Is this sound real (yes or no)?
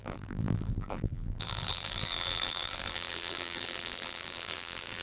no